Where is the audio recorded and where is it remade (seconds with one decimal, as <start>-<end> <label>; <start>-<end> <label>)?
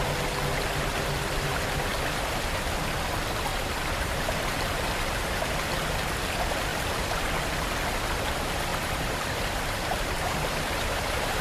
0.0-3.5 recorded; 3.5-5.5 remade; 5.5-6.7 recorded; 6.7-7.3 remade; 7.3-8.7 recorded; 8.7-11.4 remade